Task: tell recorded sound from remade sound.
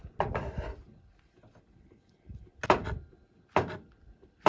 recorded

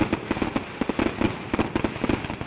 recorded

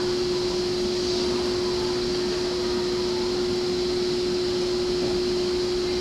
recorded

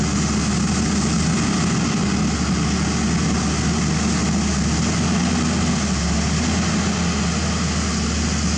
recorded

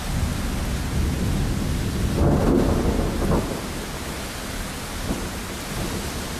recorded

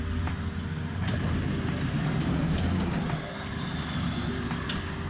recorded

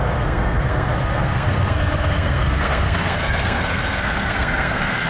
remade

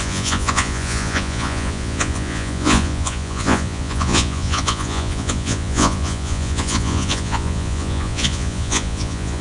remade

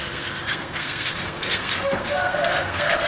remade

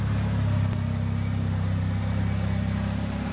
recorded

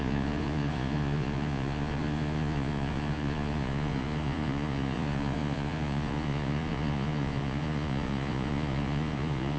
remade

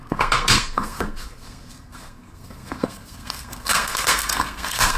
remade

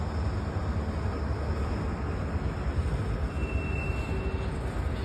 recorded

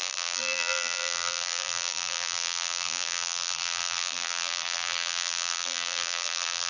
remade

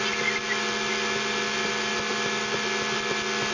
recorded